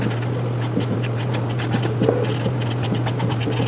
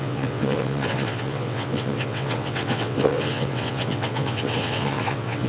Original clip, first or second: first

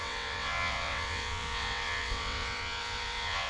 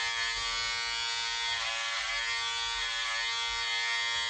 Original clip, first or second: second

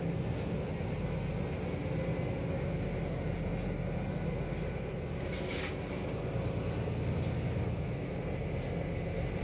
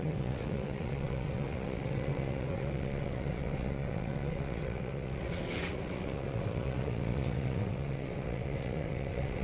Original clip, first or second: first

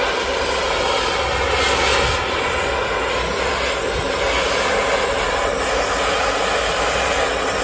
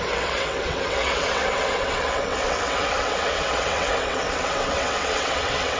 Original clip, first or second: first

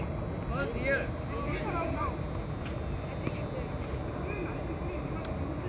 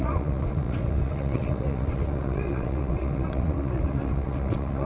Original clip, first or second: first